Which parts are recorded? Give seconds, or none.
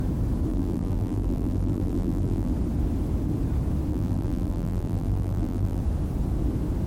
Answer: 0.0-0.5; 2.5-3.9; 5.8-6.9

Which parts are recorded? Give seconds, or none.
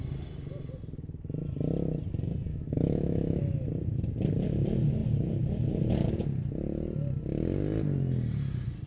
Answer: 0.0-2.5; 3.7-8.9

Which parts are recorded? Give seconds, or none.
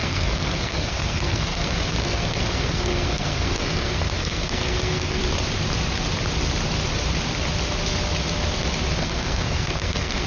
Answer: 5.2-9.0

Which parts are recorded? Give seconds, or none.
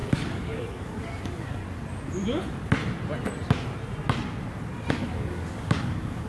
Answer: 1.6-4.9